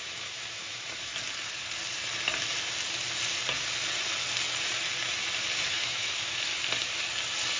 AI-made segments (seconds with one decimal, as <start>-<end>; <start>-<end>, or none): 0.0-1.1; 5.7-6.5